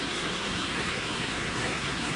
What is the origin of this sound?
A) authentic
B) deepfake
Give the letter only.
B